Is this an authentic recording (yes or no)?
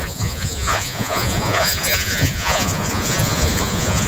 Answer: no